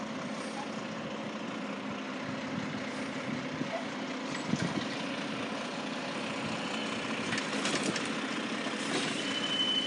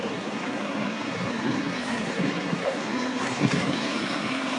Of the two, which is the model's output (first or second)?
second